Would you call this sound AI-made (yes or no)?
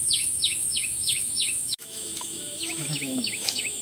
yes